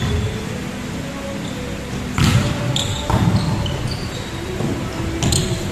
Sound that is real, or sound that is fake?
real